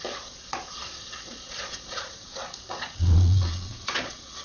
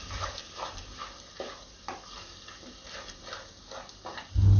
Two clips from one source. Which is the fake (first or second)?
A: first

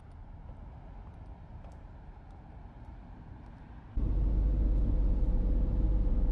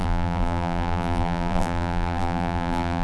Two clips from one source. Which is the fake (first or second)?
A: second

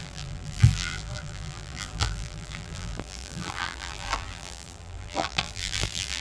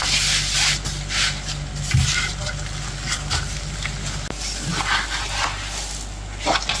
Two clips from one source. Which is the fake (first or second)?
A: first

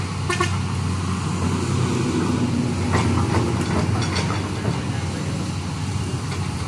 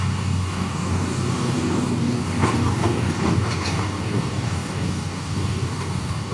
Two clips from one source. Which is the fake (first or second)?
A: second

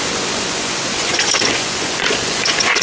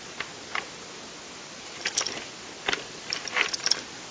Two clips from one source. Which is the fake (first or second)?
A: first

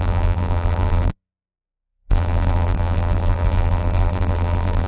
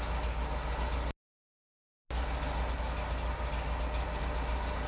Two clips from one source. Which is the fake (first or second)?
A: first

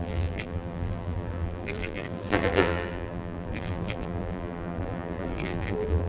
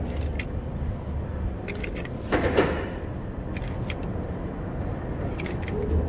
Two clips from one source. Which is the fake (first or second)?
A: first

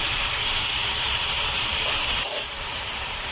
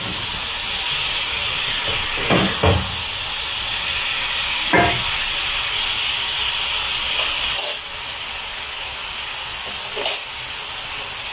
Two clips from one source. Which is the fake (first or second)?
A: first